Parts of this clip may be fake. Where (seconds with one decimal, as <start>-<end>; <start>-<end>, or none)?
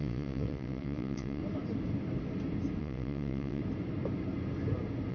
0.0-1.4; 2.8-3.6